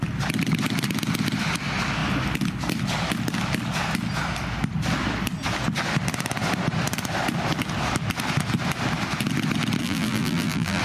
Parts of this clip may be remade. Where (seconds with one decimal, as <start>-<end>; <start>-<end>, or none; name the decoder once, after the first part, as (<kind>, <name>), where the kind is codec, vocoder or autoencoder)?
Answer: 9.8-10.8 (vocoder, BigVGAN v2)